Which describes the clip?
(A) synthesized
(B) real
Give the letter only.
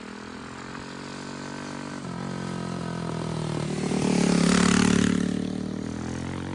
B